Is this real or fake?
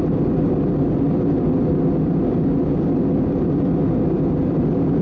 real